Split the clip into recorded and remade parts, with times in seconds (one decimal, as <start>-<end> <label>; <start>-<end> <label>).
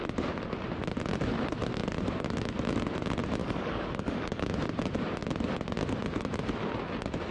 0.0-3.4 recorded; 3.4-4.5 remade; 4.5-7.3 recorded